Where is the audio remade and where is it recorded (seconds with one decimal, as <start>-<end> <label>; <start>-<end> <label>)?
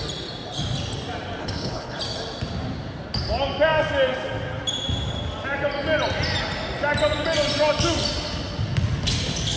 0.0-1.4 recorded; 1.4-2.0 remade; 2.0-9.6 recorded